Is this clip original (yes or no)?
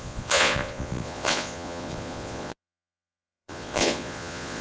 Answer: no